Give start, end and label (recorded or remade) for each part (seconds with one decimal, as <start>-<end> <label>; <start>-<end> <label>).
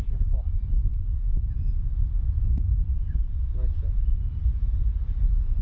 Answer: 0.0-0.9 remade; 0.9-1.9 recorded; 1.9-5.6 remade